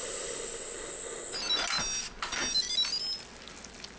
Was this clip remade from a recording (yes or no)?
no